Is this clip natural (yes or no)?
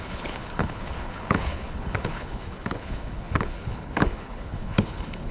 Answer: no